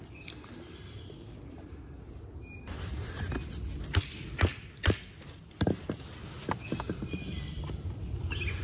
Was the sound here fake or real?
real